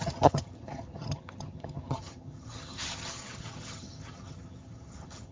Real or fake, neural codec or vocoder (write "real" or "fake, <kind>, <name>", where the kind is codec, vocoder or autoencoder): fake, vocoder, HiFi-GAN